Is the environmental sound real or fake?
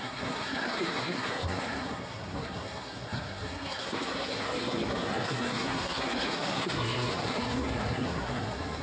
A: fake